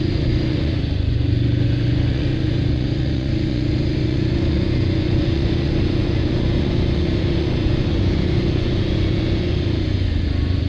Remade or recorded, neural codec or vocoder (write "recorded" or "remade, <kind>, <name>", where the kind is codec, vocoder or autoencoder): remade, vocoder, Vocos